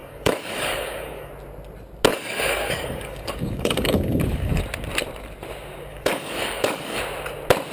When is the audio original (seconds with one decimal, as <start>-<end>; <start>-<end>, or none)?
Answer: 1.3-2.1; 4.6-5.9; 7.0-7.7

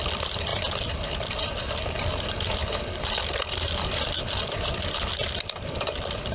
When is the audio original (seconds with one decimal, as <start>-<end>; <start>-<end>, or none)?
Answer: 0.0-6.3

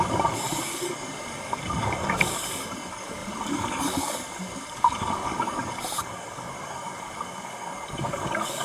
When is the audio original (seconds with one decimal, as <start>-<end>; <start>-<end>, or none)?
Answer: none

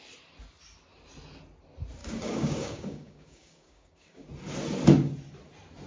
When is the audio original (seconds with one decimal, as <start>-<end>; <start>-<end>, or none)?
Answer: 0.0-2.0; 4.3-5.9

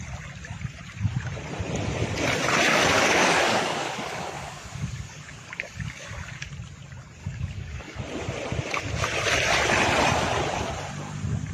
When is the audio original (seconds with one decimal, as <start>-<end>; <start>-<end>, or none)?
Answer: 0.0-2.7; 6.5-7.2; 8.0-11.5

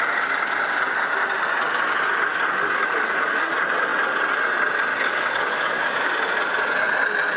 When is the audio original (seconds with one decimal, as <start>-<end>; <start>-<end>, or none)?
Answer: 0.0-2.3; 3.5-4.9; 6.1-7.4

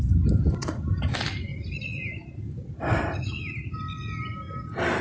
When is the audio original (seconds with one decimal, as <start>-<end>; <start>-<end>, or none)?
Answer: 0.0-5.0